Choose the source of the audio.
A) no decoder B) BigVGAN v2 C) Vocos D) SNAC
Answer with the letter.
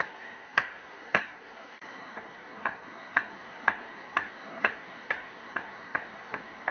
D